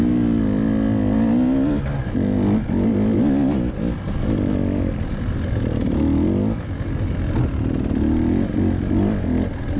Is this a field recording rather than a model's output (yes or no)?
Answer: yes